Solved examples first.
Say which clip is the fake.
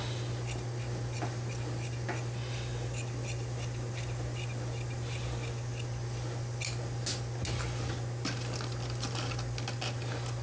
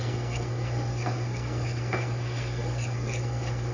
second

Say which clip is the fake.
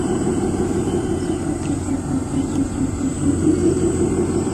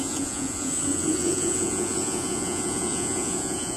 second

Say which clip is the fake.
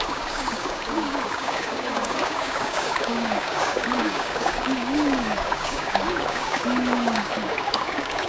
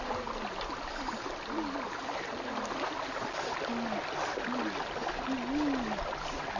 first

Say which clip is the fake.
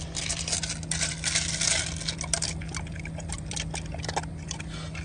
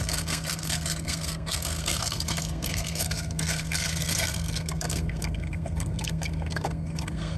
second